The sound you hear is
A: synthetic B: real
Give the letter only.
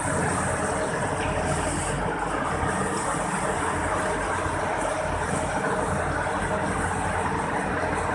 B